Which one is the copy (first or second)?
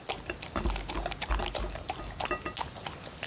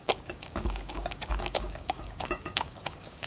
second